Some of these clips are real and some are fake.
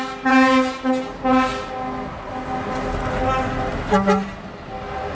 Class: real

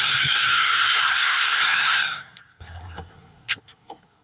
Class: fake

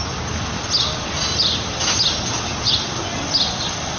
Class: real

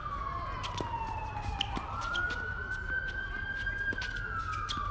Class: real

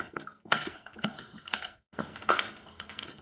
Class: fake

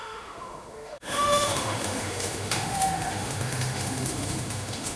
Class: fake